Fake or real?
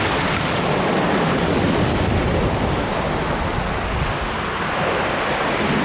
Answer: real